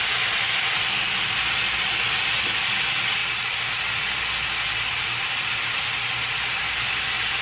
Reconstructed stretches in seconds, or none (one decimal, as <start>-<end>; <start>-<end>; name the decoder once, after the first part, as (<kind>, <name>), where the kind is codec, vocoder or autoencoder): none